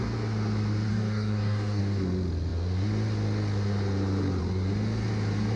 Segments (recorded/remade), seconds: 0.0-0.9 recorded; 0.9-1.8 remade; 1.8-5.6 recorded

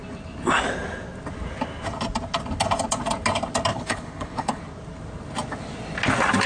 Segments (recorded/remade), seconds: 0.0-3.7 recorded; 3.7-4.6 remade; 4.6-6.5 recorded

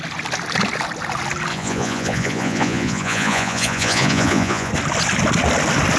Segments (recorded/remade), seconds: 0.0-1.5 recorded; 1.5-4.7 remade; 4.7-6.0 recorded

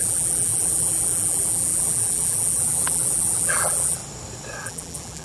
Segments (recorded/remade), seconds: 0.0-4.0 remade; 4.0-4.6 recorded; 4.6-5.2 remade

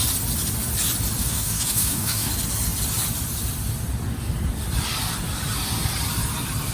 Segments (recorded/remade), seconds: 0.0-1.2 recorded; 1.2-2.3 remade; 2.3-6.7 recorded